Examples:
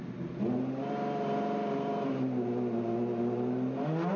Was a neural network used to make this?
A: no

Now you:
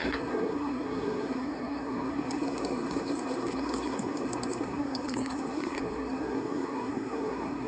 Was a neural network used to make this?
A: yes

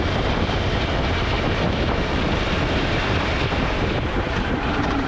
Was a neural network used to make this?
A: yes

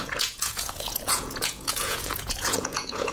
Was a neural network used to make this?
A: yes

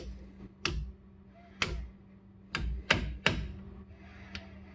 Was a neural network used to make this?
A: no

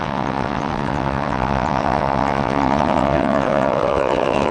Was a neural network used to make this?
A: yes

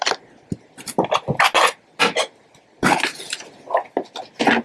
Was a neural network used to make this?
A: no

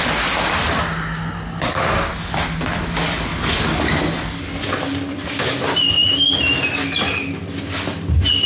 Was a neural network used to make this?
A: no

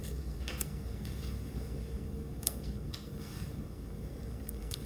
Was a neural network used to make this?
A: yes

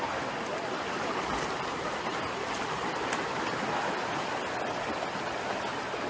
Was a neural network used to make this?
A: no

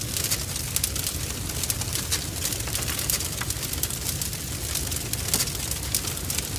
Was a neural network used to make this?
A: no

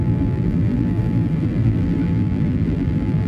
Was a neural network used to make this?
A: yes